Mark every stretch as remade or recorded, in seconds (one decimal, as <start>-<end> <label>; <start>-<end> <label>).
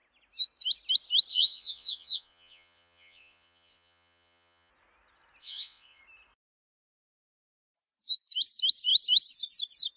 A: 0.0-1.3 recorded; 1.3-4.7 remade; 4.7-5.4 recorded; 5.4-6.0 remade; 6.0-10.0 recorded